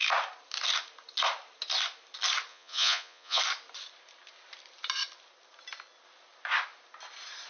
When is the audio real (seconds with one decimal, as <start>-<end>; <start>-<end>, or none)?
0.0-2.5; 3.4-7.5